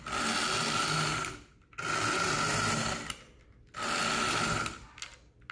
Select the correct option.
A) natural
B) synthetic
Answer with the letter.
A